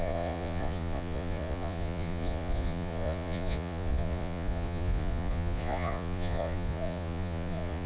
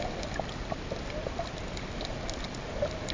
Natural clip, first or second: second